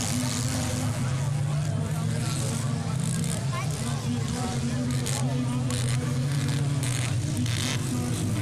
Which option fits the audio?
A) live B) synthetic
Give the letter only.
A